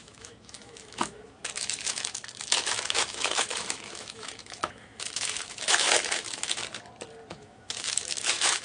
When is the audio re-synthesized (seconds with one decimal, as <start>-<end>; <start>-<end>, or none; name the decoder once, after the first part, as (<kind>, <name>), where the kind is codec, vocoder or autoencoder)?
0.0-6.6 (autoencoder, DAC-VAE); 7.3-8.6